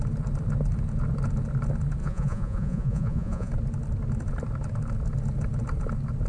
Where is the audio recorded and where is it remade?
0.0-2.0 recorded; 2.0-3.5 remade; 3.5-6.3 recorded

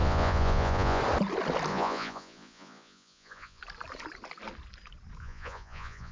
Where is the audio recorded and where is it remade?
0.0-1.0 remade; 1.0-1.7 recorded; 1.7-3.6 remade; 3.6-5.2 recorded; 5.2-6.1 remade

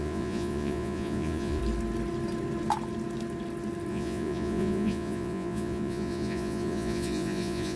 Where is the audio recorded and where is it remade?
0.0-1.6 remade; 1.6-3.9 recorded; 3.9-7.8 remade

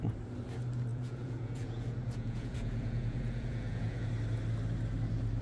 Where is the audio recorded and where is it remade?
0.0-0.9 recorded; 0.9-4.1 remade; 4.1-5.4 recorded

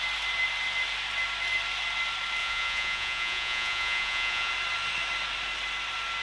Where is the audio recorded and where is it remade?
0.0-2.4 recorded; 2.4-4.5 remade; 4.5-6.2 recorded

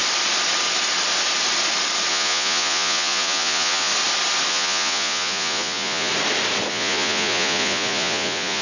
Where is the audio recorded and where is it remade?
0.0-2.1 recorded; 2.1-3.9 remade; 3.9-4.5 recorded; 4.5-6.1 remade; 6.1-6.7 recorded; 6.7-8.6 remade

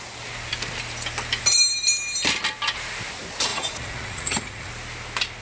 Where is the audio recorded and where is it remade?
0.0-3.5 recorded; 3.5-4.7 remade; 4.7-5.4 recorded

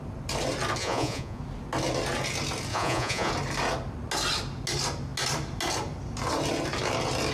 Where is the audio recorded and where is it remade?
0.0-0.8 recorded; 0.8-1.4 remade; 1.4-2.7 recorded; 2.7-3.3 remade; 3.3-7.3 recorded